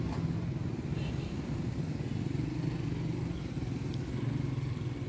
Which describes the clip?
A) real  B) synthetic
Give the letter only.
A